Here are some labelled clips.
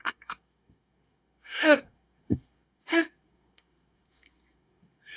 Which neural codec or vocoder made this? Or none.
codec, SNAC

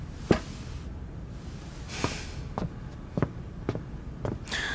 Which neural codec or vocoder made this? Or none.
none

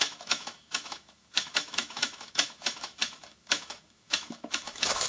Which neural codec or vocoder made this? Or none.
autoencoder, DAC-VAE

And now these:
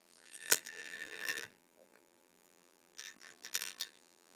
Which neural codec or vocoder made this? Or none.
vocoder, BigVGAN v2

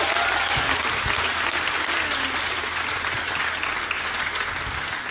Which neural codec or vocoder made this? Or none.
none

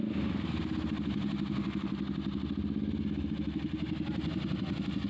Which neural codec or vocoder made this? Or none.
none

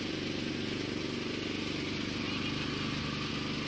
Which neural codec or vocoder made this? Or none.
none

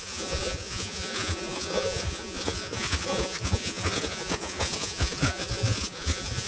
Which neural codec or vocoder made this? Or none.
vocoder, Vocos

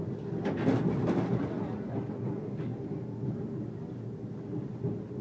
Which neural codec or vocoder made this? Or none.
none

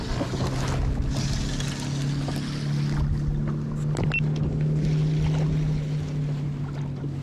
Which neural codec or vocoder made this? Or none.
none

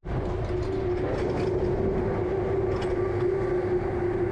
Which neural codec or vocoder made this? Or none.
none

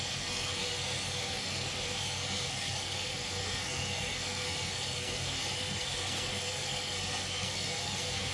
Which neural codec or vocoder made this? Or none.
codec, SNAC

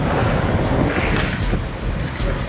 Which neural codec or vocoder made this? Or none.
none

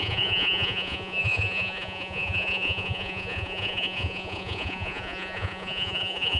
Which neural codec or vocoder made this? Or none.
vocoder, Vocos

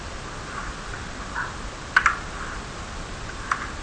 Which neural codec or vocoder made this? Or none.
none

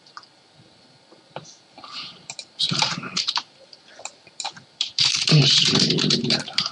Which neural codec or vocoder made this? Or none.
vocoder, BigVGAN v2